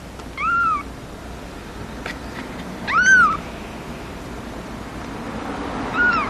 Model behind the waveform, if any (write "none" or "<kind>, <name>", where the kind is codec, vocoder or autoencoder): vocoder, BigVGAN v2